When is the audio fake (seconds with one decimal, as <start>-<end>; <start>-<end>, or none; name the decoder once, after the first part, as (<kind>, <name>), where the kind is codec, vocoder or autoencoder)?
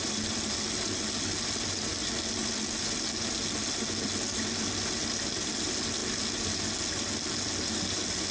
none